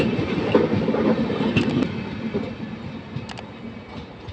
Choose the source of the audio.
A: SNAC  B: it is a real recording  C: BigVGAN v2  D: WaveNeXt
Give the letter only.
B